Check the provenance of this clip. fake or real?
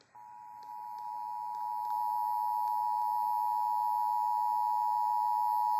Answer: real